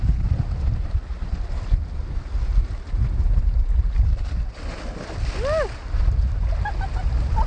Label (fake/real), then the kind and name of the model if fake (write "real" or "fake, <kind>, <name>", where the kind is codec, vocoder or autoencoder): real